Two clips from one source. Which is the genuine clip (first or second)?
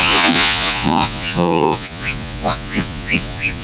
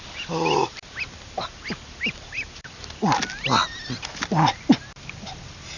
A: second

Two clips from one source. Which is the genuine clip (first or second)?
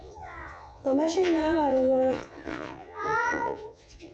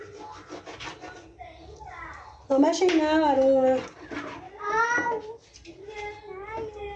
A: second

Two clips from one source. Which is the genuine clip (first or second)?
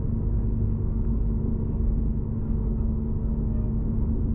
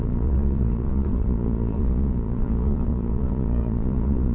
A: first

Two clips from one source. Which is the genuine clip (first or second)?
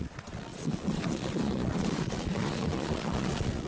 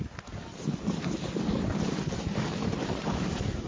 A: second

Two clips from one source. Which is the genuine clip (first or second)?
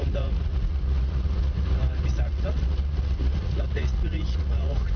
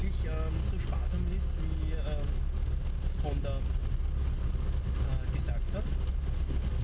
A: second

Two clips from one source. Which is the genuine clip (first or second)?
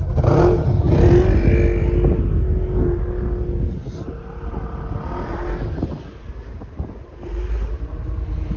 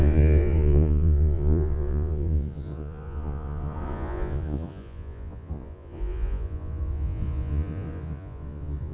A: first